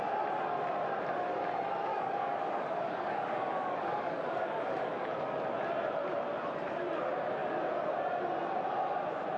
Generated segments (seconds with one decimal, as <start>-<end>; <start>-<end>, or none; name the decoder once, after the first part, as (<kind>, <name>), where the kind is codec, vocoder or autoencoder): 1.9-5.1 (codec, DAC)